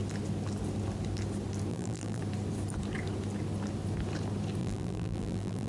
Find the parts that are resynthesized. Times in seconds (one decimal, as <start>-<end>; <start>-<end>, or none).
1.7-2.2; 4.6-5.7